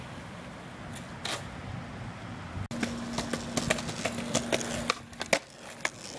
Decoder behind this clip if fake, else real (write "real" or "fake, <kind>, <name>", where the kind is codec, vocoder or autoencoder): real